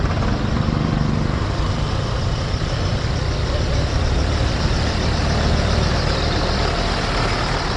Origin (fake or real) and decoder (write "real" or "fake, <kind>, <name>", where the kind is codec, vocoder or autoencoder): fake, vocoder, BigVGAN v2